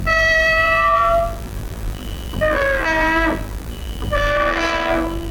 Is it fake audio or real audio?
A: fake